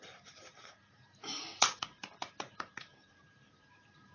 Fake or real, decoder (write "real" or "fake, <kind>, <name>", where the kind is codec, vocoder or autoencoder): fake, vocoder, BigVGAN v2